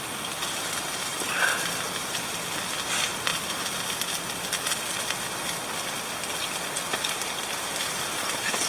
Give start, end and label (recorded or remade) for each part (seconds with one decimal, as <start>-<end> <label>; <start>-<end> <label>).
0.0-1.1 recorded; 1.1-1.8 remade; 1.8-3.3 recorded; 3.3-8.7 remade